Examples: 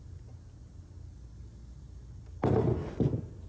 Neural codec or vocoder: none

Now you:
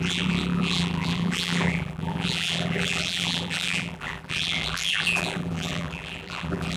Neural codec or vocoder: vocoder, BigVGAN v2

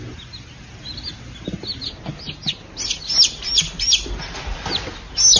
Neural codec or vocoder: none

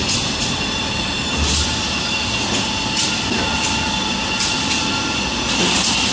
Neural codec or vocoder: none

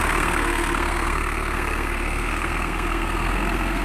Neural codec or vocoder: codec, SNAC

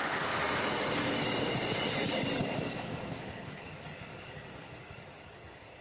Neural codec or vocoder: codec, DAC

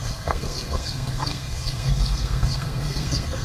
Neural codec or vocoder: codec, SNAC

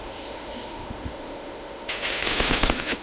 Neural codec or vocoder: autoencoder, DAC-VAE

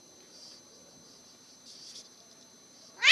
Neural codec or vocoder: vocoder, BigVGAN v2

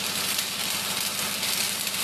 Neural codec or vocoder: none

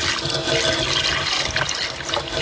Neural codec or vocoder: none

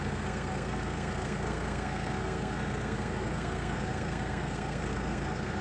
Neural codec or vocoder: codec, SNAC